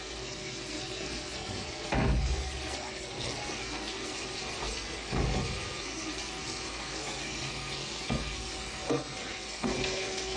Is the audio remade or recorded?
remade